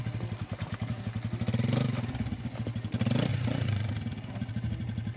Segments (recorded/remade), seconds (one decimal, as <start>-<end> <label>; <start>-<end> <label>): 0.0-3.3 recorded; 3.3-3.9 remade; 3.9-5.2 recorded